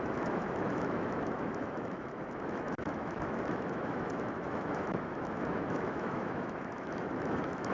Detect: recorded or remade remade